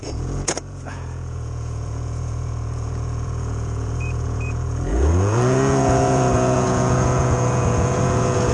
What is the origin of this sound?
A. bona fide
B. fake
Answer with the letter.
B